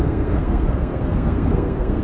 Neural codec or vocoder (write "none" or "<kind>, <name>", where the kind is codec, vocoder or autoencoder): codec, SNAC